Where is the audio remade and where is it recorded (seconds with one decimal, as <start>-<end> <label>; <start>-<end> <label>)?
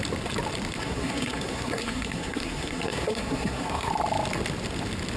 0.0-0.8 recorded; 0.8-3.9 remade; 3.9-5.2 recorded